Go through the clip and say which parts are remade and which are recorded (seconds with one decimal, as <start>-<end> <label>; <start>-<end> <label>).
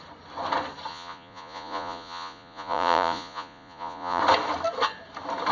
0.0-0.9 recorded; 0.9-4.2 remade; 4.2-5.5 recorded